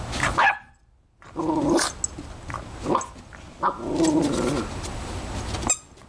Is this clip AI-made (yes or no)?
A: no